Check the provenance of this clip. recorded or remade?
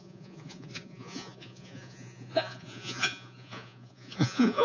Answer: remade